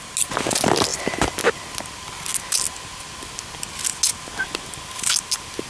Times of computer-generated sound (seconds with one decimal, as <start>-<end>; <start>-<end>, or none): none